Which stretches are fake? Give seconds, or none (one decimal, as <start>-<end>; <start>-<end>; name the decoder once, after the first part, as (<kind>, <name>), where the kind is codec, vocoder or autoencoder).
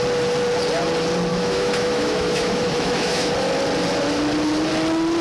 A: 1.3-3.3 (autoencoder, DAC-VAE)